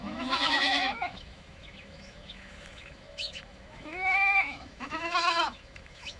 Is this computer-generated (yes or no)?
yes